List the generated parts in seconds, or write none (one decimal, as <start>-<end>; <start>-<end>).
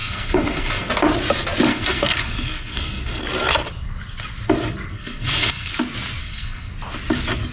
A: 0.0-0.9; 1.7-3.2; 4.9-5.7; 6.2-6.7